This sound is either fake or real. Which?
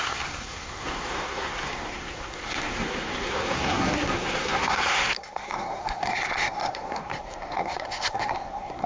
fake